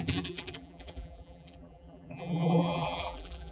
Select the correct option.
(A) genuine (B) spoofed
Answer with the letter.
B